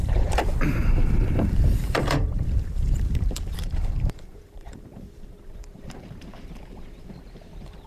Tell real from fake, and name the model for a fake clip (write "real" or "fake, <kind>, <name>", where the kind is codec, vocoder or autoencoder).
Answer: fake, vocoder, BigVGAN v2